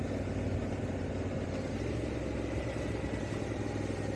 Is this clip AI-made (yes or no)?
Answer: no